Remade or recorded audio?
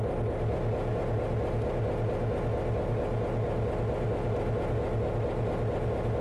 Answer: recorded